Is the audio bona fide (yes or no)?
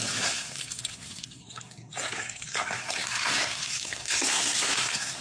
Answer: no